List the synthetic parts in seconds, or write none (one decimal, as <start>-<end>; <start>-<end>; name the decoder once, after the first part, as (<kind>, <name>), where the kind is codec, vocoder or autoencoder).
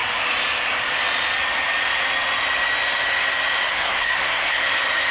3.7-4.6 (codec, SNAC)